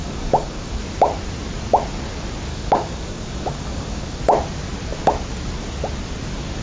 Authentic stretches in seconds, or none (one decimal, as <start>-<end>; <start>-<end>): 0.8-2.5; 4.2-6.6

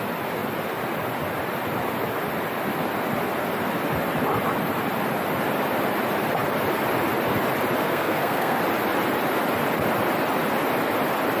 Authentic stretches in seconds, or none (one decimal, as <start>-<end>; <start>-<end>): 0.0-7.8; 8.6-11.4

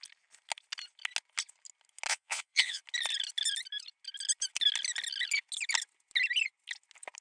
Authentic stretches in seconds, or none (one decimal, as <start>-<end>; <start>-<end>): 0.0-2.1; 2.8-7.2

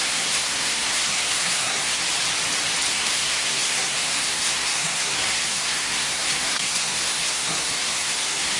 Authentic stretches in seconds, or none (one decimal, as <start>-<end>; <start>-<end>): 2.0-2.9

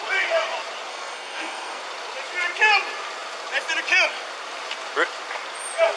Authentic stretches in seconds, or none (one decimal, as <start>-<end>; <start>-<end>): 0.0-0.9; 1.8-6.0